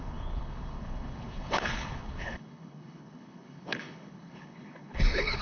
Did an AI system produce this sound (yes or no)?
yes